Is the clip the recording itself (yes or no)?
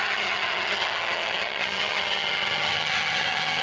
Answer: no